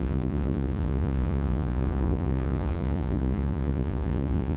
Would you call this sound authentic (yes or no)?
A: no